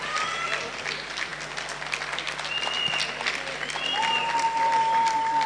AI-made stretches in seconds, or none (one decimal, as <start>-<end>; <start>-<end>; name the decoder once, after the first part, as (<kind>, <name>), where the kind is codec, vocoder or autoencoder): none